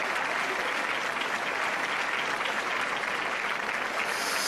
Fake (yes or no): no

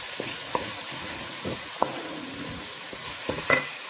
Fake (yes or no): yes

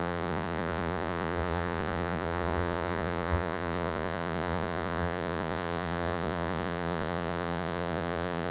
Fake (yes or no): yes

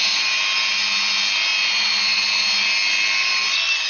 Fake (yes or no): no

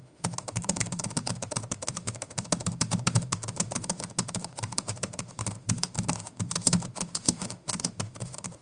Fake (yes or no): yes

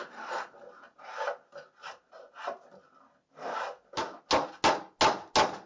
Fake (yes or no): no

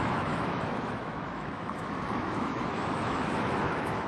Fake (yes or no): yes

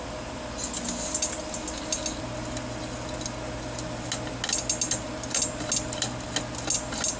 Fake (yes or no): no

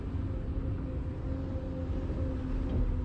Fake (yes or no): no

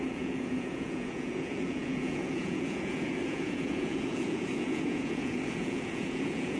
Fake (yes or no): yes